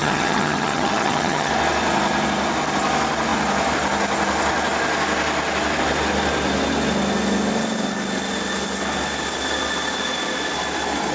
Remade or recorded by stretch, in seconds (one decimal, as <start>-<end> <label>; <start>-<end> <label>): 0.0-1.5 remade; 1.5-11.1 recorded